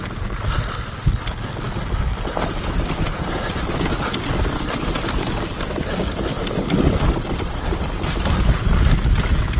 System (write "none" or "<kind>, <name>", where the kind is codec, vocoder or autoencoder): none